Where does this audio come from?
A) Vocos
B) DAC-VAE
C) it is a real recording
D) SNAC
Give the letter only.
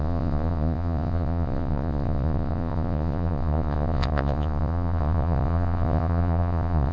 A